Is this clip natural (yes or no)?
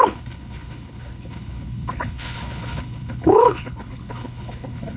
no